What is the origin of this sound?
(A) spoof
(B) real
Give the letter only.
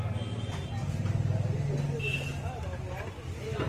B